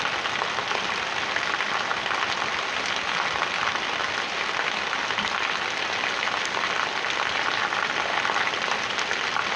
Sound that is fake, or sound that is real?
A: real